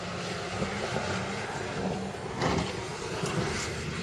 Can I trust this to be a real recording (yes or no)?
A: yes